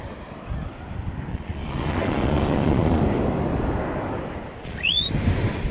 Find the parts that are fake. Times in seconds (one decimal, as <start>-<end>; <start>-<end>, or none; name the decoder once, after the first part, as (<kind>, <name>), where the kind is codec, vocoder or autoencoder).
1.3-3.0 (vocoder, Vocos); 4.6-5.1